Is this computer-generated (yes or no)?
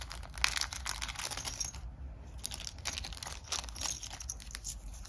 no